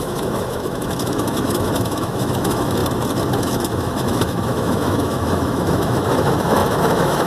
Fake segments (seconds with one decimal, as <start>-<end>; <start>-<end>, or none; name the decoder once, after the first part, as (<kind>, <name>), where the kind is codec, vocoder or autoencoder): 0.0-2.8 (autoencoder, DAC-VAE); 3.4-7.3